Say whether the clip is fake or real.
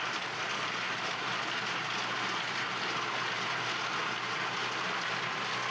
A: real